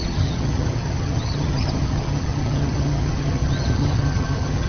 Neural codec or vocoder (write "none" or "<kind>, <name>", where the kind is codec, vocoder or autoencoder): vocoder, HiFi-GAN